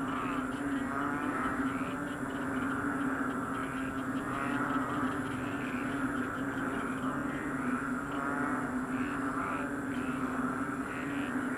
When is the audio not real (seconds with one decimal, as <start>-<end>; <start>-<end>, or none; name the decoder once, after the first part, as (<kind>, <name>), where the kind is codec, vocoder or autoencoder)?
none